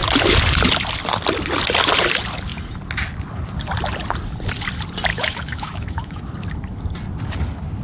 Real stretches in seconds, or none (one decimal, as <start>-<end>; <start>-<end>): 0.0-5.1; 6.2-7.8